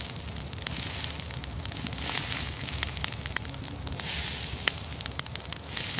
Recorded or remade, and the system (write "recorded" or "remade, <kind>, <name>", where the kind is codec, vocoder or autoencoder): recorded